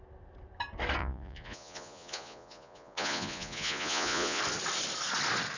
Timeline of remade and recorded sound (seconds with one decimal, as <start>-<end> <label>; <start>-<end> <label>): 0.0-1.0 recorded; 1.0-4.4 remade; 4.4-5.6 recorded